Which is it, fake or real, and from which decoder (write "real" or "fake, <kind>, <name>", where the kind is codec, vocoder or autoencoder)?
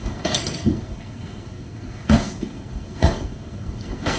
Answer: fake, codec, SNAC